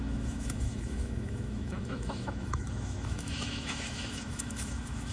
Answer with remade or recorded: remade